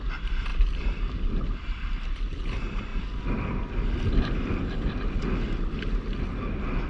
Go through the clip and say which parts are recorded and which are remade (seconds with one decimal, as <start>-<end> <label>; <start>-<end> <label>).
0.0-0.5 remade; 0.5-1.4 recorded; 1.4-2.9 remade; 2.9-6.2 recorded; 6.2-6.9 remade